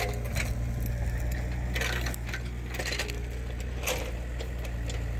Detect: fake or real real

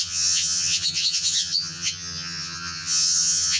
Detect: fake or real fake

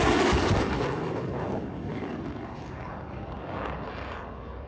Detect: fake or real fake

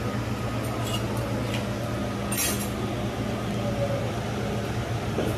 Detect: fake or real real